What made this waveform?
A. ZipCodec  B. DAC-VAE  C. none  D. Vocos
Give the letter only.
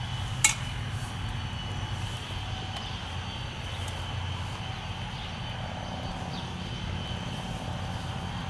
C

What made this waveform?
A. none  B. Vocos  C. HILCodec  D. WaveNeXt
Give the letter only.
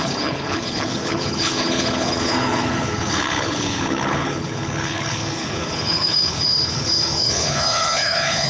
C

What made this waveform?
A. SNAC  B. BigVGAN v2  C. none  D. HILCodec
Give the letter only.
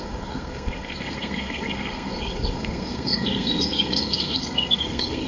A